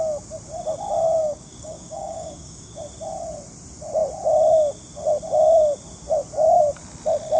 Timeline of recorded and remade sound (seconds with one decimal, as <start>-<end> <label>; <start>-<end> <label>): 0.0-1.2 recorded; 1.2-2.8 remade; 2.8-7.4 recorded